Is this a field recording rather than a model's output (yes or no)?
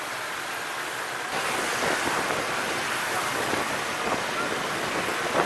yes